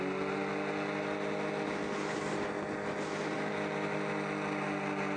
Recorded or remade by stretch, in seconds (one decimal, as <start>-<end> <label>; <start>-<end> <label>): 0.0-5.2 recorded